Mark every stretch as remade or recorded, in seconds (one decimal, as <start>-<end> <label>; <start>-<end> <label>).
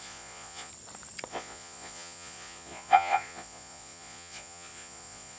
0.0-0.7 remade; 0.7-1.3 recorded; 1.3-5.4 remade